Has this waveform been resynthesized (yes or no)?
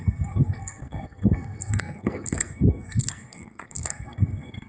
yes